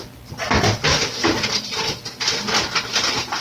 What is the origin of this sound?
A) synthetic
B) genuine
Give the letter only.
B